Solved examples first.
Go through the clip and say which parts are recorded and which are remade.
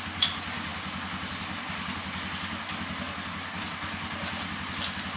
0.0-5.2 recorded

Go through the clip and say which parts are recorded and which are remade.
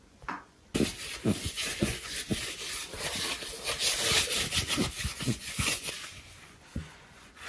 0.0-0.7 remade; 0.7-1.4 recorded; 1.4-2.3 remade; 2.3-5.0 recorded; 5.0-7.5 remade